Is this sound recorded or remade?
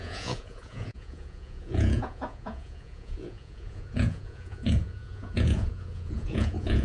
remade